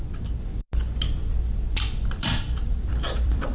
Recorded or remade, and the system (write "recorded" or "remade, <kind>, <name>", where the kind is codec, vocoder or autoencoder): remade, vocoder, BigVGAN v2